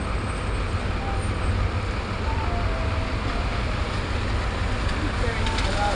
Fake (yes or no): no